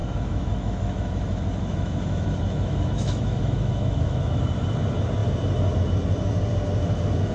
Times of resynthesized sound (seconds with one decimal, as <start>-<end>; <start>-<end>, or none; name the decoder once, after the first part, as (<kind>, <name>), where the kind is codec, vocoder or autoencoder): 0.0-4.4 (autoencoder, DAC-VAE)